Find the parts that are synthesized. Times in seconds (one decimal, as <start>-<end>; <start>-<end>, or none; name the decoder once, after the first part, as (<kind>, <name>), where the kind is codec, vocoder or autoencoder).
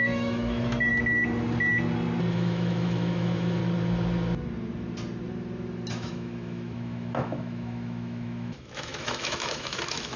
0.0-0.9 (autoencoder, DAC-VAE); 2.3-3.6; 5.9-10.2